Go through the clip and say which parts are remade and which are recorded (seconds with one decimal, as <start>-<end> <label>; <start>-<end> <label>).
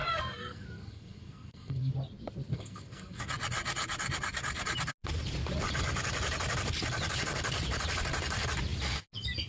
0.0-1.9 remade; 1.9-2.5 recorded; 2.5-3.3 remade; 3.3-9.5 recorded